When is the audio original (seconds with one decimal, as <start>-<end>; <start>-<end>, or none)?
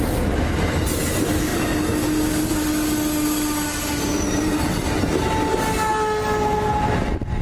0.0-7.4